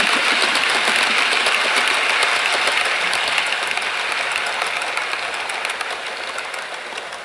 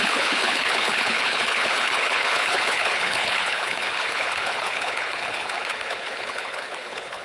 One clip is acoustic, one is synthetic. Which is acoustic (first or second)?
first